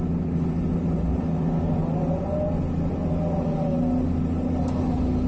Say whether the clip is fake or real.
real